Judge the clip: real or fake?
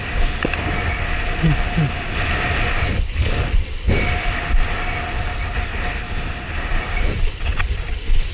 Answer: real